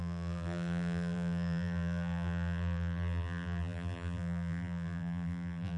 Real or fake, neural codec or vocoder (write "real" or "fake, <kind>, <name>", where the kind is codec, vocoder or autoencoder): fake, vocoder, BigVGAN v2